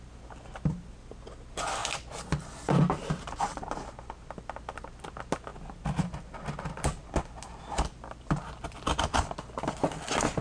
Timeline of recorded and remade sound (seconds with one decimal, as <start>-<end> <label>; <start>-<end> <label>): 0.0-10.4 recorded